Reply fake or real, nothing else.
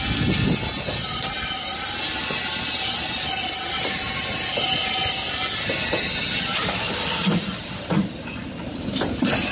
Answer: real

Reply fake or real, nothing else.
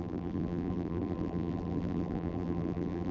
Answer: fake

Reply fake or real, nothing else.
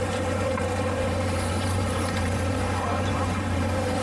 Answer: fake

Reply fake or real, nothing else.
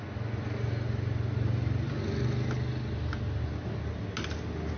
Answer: real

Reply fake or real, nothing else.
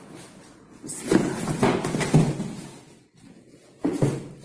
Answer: real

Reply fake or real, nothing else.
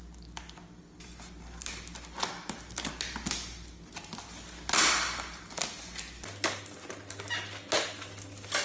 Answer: real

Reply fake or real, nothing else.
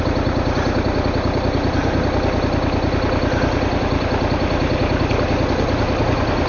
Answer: real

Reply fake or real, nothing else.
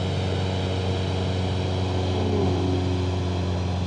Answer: real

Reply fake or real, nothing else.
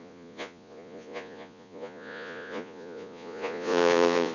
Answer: fake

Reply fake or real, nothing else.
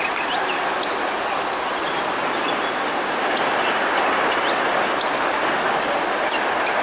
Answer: real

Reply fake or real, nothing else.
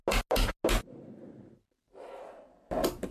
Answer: real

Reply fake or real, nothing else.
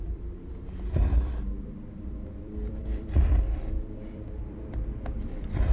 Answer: fake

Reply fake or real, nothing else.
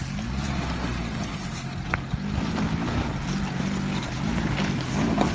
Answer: real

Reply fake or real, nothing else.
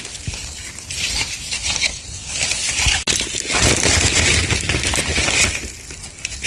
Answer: real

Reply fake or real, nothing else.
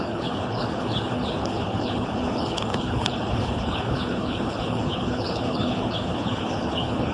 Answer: fake